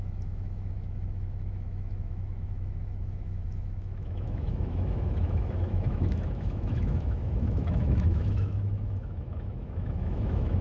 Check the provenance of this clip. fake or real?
fake